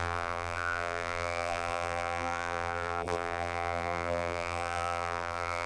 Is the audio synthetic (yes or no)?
yes